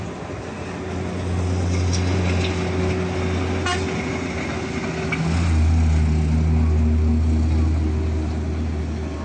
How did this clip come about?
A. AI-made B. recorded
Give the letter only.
B